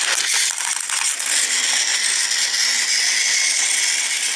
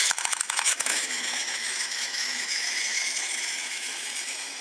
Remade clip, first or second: second